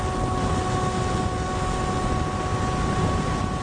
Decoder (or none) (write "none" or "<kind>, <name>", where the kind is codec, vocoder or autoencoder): none